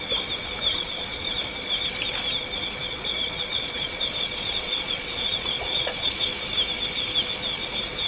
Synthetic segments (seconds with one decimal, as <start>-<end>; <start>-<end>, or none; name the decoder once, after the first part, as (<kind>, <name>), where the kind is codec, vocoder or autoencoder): 0.7-1.4 (vocoder, Vocos); 2.8-6.2